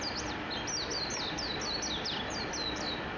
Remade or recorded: recorded